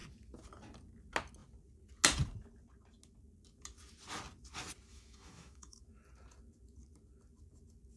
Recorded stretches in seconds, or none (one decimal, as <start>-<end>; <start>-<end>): 0.0-4.9; 5.8-8.0